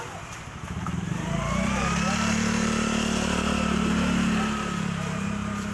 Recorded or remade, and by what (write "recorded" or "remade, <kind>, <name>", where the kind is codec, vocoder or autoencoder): remade, vocoder, BigVGAN v2